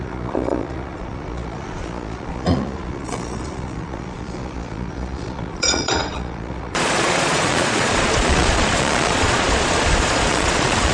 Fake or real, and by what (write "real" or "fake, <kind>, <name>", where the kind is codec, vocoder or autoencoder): fake, vocoder, Vocos